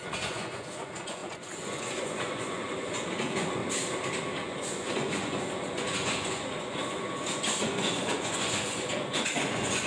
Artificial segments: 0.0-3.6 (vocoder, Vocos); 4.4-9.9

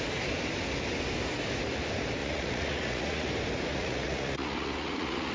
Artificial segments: 2.2-3.3 (vocoder, Vocos); 3.7-5.3

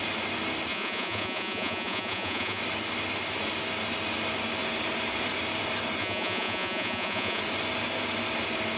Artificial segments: 0.7-2.6 (vocoder, Vocos); 6.0-7.4

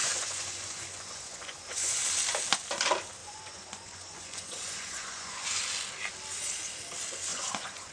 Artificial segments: 0.0-2.0 (vocoder, Vocos); 3.2-5.6; 7.3-7.9

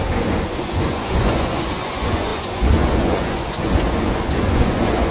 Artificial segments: 0.0-5.1 (vocoder, Vocos)